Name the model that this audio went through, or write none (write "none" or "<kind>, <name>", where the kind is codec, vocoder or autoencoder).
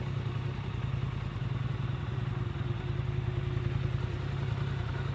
none